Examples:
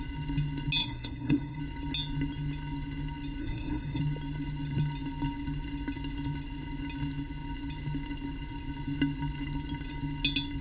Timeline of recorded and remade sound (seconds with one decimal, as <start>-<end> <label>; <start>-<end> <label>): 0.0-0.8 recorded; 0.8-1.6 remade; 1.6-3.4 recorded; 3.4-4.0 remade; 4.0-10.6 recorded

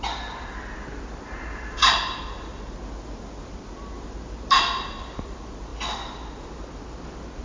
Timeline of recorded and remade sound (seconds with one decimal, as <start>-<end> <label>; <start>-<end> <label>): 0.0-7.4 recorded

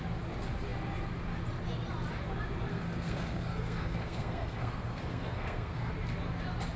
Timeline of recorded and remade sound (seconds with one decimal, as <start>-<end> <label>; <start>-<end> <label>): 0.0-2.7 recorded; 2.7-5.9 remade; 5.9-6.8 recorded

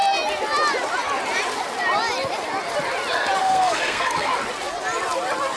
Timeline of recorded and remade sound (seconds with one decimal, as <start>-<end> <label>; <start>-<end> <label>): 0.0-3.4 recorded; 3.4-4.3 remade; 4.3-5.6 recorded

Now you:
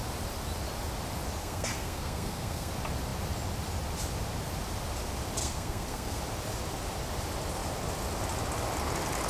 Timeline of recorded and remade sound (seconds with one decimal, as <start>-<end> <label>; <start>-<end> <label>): 0.0-1.4 recorded; 1.4-2.7 remade; 2.7-5.4 recorded; 5.4-6.2 remade; 6.2-9.3 recorded